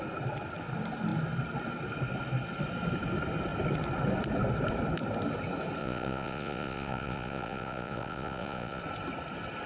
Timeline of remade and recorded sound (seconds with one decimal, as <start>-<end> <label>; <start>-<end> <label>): 0.0-5.8 recorded; 5.8-8.8 remade; 8.8-9.7 recorded